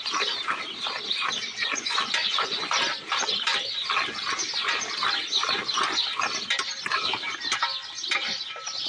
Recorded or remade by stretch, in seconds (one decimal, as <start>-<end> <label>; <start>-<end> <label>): 0.0-1.5 recorded; 1.5-2.7 remade; 2.7-8.9 recorded